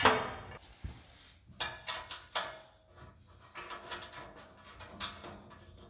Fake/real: real